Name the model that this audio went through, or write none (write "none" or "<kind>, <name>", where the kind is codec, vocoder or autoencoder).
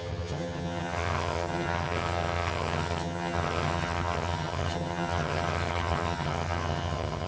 vocoder, HiFi-GAN